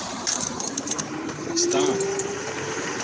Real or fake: fake